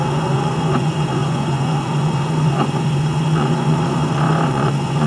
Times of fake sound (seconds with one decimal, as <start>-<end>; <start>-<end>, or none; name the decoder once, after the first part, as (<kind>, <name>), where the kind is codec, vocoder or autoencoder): 0.0-5.1 (vocoder, Vocos)